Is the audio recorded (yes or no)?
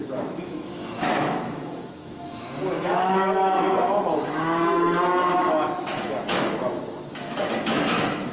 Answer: no